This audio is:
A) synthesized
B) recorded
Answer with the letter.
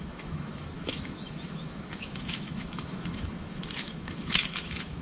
A